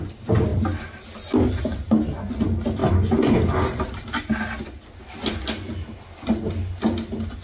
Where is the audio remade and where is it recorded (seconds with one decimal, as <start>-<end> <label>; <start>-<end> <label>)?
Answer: 0.0-7.4 recorded